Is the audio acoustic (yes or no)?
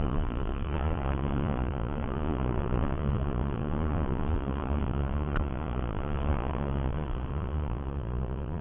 no